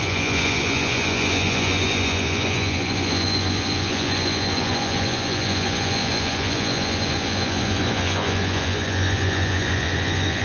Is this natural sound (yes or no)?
no